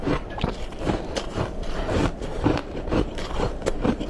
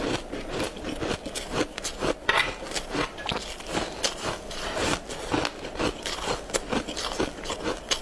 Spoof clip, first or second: first